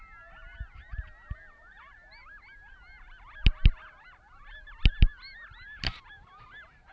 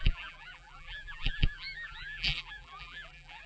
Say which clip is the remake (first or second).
second